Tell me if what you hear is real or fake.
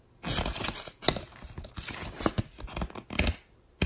real